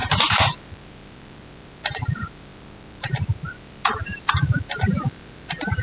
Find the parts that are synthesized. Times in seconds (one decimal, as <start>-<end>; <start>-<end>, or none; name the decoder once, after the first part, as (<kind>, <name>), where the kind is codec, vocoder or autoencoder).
0.0-5.8 (vocoder, BigVGAN v2)